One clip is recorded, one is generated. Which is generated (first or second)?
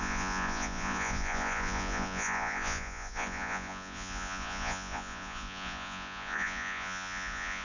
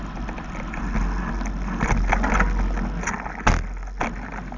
first